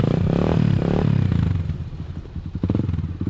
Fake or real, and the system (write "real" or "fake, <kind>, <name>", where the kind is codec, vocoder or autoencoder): real